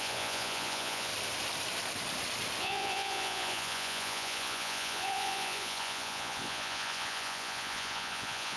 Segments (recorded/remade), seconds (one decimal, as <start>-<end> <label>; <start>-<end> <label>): 0.0-1.1 remade; 1.1-2.6 recorded; 2.6-8.6 remade